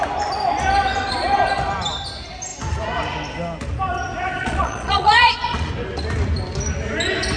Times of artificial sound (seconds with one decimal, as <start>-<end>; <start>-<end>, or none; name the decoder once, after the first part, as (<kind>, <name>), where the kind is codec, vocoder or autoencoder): 4.4-5.7 (vocoder, Vocos)